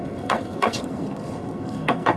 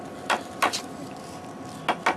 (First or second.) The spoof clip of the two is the first